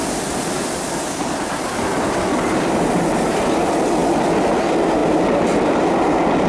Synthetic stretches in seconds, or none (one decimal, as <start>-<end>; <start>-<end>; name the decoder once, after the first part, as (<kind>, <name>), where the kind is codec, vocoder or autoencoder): none